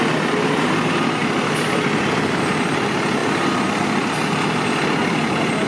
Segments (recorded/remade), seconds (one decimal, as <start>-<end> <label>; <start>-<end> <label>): 0.0-3.2 remade; 3.2-5.1 recorded; 5.1-5.7 remade

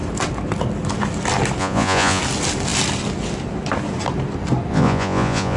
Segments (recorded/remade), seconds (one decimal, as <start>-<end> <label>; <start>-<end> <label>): 0.0-1.6 recorded; 1.6-2.2 remade; 2.2-4.7 recorded; 4.7-5.6 remade